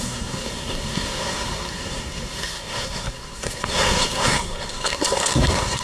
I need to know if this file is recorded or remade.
remade